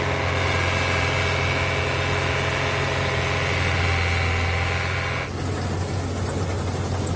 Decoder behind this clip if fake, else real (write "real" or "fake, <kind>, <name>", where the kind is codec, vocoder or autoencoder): real